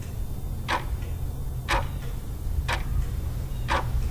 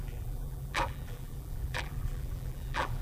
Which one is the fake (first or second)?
second